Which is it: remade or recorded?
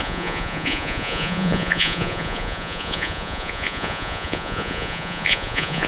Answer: remade